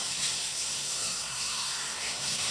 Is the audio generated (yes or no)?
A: yes